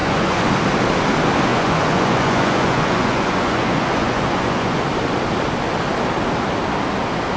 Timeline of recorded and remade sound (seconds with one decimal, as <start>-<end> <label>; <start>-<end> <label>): 0.0-0.5 remade; 0.5-1.5 recorded; 1.5-4.8 remade; 4.8-7.4 recorded